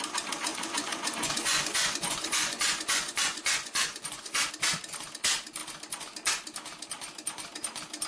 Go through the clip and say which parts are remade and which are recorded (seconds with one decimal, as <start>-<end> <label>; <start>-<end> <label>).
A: 0.0-0.5 recorded; 0.5-4.5 remade; 4.5-8.1 recorded